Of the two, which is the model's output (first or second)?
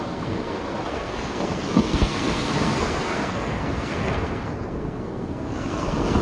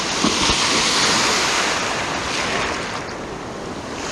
first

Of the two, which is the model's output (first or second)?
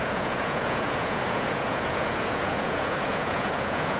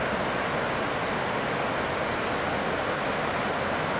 first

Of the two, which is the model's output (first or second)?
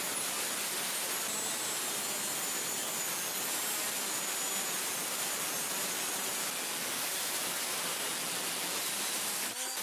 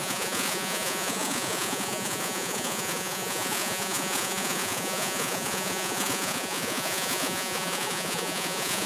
second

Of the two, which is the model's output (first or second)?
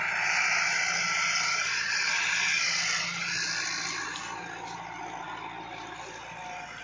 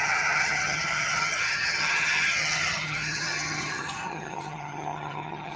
second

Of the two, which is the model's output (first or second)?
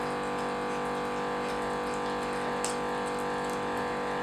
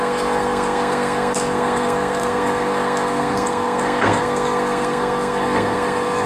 second